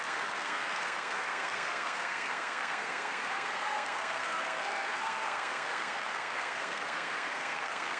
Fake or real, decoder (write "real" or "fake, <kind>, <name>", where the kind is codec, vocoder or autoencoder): fake, codec, SNAC